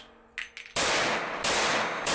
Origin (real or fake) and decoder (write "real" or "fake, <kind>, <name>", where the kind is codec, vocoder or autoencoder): real